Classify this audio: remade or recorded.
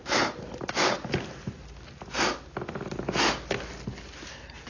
recorded